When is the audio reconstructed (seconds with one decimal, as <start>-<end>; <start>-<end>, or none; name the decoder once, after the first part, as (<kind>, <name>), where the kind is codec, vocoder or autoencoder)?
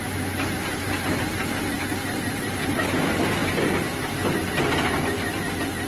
none